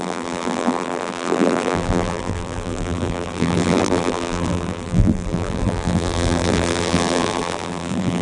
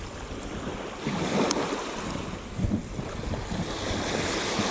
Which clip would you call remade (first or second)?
first